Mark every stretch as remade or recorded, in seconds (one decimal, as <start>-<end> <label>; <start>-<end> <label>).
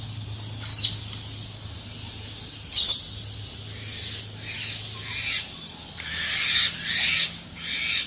0.0-8.1 recorded